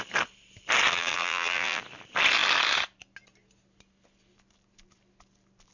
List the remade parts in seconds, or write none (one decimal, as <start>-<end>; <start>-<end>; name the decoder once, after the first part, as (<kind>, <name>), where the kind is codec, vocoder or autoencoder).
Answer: 0.9-1.8 (vocoder, BigVGAN v2)